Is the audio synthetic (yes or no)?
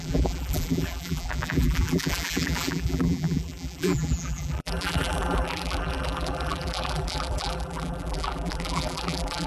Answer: yes